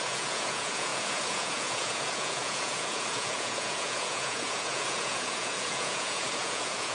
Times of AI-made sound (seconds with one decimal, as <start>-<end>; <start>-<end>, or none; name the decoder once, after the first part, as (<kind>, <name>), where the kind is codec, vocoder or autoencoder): 0.0-6.9 (vocoder, Vocos)